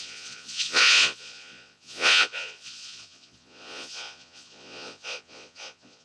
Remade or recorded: remade